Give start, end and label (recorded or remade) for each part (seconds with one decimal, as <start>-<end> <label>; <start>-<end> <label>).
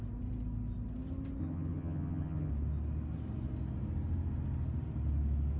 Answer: 0.0-1.4 recorded; 1.4-2.5 remade; 2.5-5.6 recorded